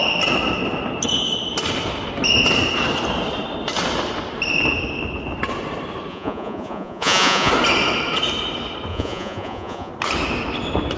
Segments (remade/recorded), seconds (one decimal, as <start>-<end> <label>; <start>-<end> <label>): 0.0-6.1 recorded; 6.1-7.5 remade; 7.5-8.9 recorded; 8.9-9.9 remade; 9.9-11.0 recorded